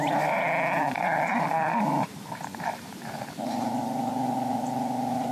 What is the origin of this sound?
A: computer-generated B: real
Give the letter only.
A